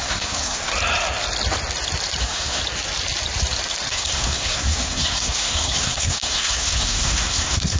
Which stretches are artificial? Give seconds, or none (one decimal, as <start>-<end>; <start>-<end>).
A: 0.0-0.7; 2.2-2.6; 3.9-7.8

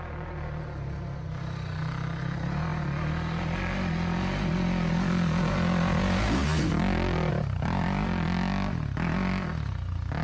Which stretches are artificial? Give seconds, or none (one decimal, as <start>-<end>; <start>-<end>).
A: none